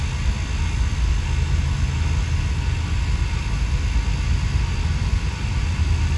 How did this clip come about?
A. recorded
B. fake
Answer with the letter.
A